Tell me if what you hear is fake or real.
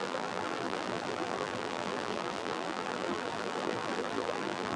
fake